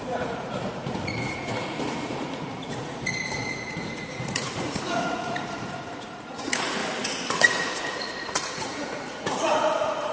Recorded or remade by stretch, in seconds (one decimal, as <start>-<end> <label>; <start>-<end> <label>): 0.0-6.8 remade; 6.8-7.3 recorded; 7.3-10.1 remade